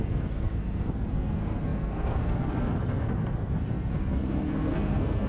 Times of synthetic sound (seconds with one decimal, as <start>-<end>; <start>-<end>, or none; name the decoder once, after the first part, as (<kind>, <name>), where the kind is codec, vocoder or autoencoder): 0.0-5.3 (codec, SNAC)